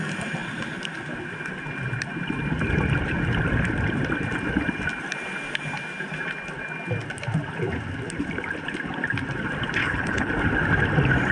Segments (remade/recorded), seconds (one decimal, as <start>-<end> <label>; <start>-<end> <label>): 0.0-9.8 recorded; 9.8-10.3 remade; 10.3-11.3 recorded